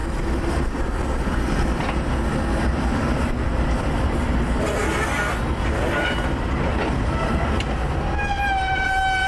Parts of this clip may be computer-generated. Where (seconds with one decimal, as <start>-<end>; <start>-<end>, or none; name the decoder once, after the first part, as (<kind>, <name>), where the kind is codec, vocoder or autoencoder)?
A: none